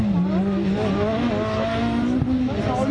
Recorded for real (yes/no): yes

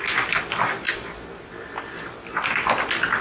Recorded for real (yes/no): yes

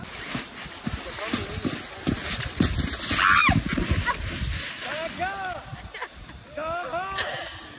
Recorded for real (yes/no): yes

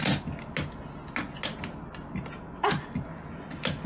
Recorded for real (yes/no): yes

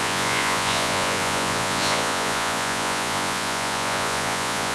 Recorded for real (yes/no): no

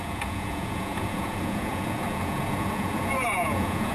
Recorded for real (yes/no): no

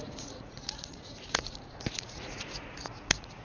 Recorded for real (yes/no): no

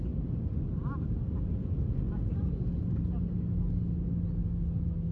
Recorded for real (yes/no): yes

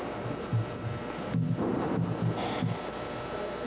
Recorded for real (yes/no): yes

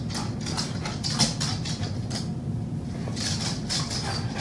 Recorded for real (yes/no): yes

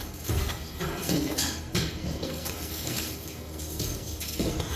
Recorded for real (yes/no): no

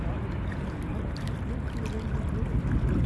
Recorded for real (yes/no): yes